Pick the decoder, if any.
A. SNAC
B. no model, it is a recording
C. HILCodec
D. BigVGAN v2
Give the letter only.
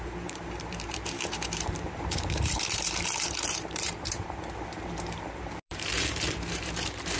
D